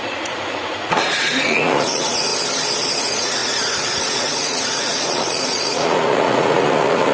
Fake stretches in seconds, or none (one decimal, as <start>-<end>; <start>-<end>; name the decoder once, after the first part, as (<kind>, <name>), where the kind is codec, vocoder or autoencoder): 0.0-2.3 (vocoder, Vocos); 3.0-7.1